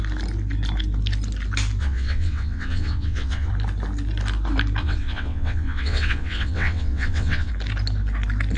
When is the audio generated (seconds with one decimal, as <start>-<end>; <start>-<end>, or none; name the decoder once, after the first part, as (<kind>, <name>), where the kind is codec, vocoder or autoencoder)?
1.8-3.5 (vocoder, WaveNeXt); 4.8-7.5